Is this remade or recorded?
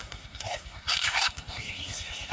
remade